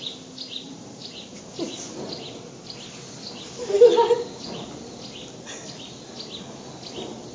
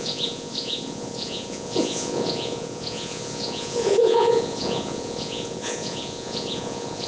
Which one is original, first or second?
first